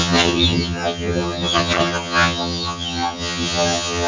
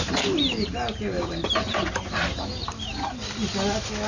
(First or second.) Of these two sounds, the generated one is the first